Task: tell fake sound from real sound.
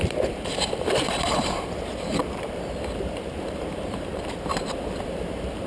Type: fake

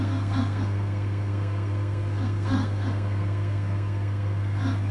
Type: fake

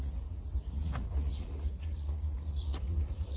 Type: fake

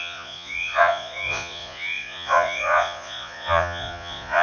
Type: fake